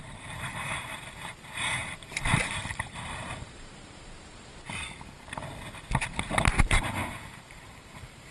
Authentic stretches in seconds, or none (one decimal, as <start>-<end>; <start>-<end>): 4.5-6.6